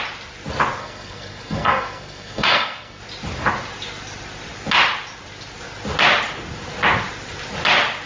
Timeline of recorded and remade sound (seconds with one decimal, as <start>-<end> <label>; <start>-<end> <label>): 0.0-0.8 recorded; 0.8-3.0 remade; 3.0-8.1 recorded